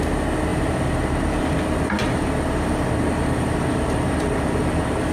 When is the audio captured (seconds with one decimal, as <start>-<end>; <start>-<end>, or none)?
0.0-0.5; 1.4-2.0